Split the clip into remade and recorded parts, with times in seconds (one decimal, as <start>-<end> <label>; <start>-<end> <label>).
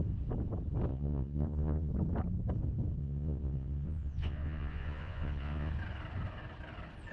0.0-0.9 recorded; 0.9-1.9 remade; 1.9-3.0 recorded; 3.0-5.7 remade; 5.7-7.1 recorded